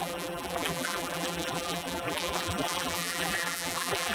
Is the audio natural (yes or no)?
no